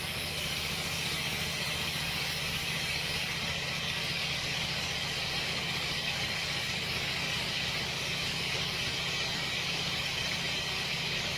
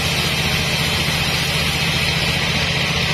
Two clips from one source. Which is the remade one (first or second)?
first